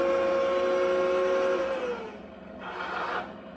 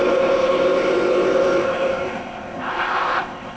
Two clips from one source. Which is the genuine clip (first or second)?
first